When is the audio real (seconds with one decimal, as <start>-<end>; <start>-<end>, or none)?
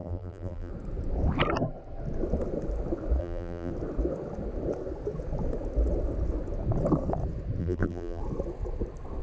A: 0.7-3.2; 3.7-7.6; 8.2-9.2